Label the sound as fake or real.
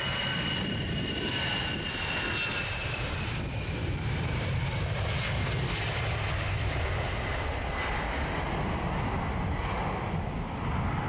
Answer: real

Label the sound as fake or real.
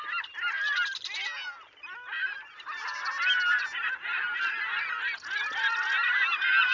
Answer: real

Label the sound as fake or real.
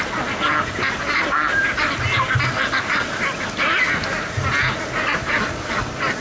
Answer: real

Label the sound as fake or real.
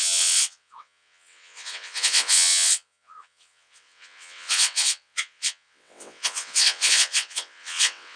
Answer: fake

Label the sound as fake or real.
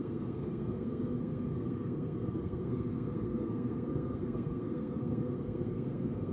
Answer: fake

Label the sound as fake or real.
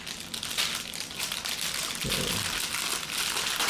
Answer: real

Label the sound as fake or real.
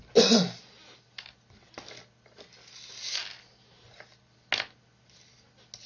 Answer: real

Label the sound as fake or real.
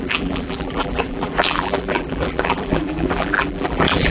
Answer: fake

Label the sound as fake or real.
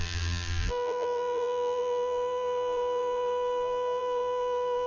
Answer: fake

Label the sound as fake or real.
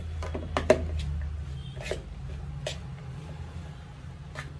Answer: real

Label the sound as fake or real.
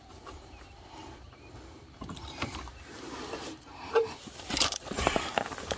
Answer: fake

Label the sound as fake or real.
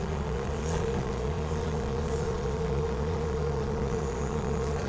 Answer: fake